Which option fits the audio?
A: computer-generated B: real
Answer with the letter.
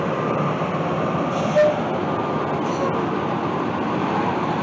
B